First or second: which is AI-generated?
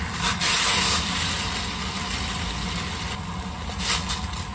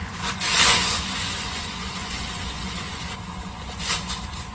second